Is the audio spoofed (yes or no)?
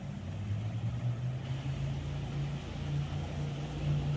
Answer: no